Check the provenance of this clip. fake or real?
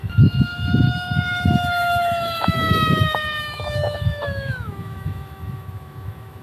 fake